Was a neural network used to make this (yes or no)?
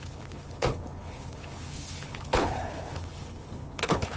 yes